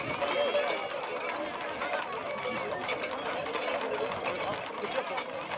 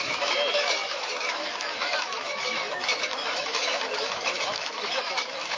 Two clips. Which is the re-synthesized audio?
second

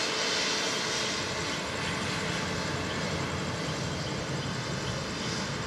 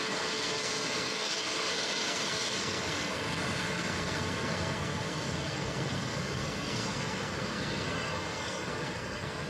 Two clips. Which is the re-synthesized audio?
second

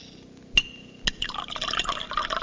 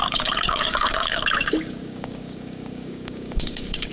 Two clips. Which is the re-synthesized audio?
second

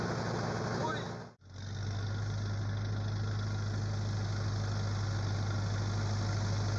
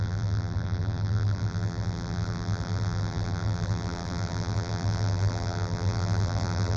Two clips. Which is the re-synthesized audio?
second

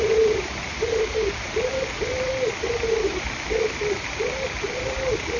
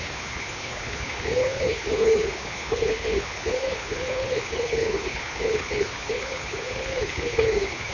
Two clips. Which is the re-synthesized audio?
second